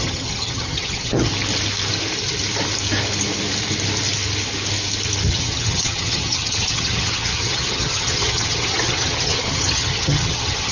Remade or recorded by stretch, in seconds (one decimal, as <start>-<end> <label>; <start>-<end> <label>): 0.0-1.3 remade; 1.3-5.3 recorded; 5.3-10.7 remade